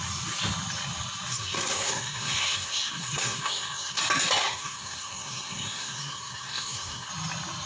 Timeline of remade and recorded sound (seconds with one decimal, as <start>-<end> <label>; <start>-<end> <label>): 0.0-1.3 recorded; 1.3-4.0 remade; 4.0-4.4 recorded; 4.4-7.1 remade; 7.1-7.7 recorded